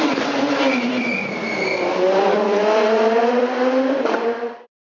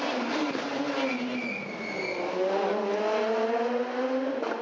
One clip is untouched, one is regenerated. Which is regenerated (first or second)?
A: first